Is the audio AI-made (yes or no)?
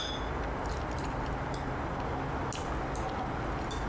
no